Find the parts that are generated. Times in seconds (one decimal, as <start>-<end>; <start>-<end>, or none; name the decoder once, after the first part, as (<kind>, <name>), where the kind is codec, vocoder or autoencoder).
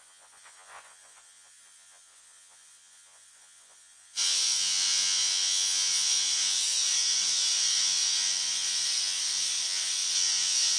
0.0-10.8 (vocoder, Vocos)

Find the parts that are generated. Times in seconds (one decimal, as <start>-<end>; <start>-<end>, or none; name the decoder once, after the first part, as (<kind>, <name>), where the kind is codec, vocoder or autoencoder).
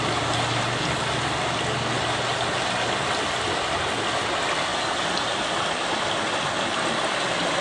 none